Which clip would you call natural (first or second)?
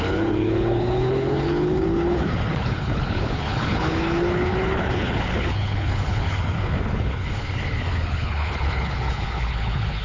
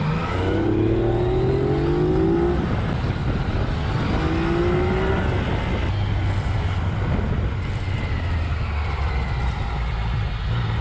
second